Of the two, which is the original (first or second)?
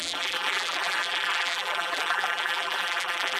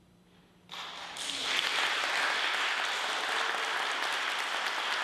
second